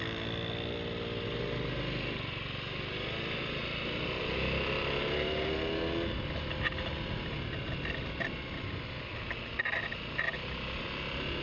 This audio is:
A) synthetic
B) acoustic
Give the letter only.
B